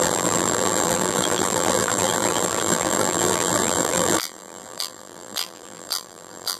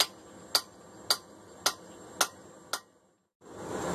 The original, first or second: second